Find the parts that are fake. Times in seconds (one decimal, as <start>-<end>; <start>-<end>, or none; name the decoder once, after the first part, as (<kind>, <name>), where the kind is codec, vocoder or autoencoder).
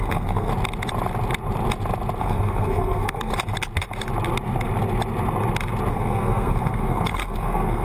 0.0-0.5 (codec, SNAC); 2.2-3.3; 5.9-7.8